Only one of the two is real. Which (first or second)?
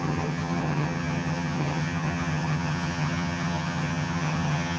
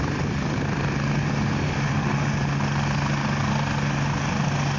second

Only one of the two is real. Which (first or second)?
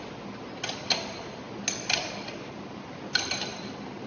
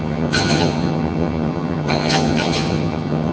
first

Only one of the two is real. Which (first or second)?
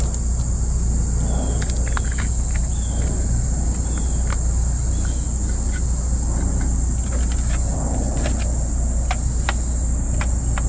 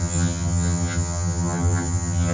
first